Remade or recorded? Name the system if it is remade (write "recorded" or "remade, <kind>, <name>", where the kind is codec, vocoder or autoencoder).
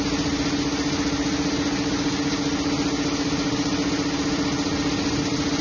recorded